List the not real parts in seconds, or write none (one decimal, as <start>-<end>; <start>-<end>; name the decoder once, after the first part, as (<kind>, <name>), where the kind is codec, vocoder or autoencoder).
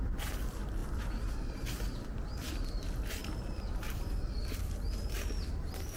0.0-6.0 (vocoder, BigVGAN v2)